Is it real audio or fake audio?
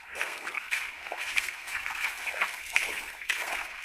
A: fake